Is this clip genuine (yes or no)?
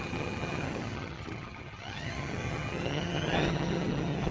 no